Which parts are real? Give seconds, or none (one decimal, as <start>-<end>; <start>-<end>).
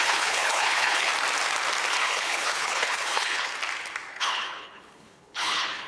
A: 1.1-2.0; 3.5-4.1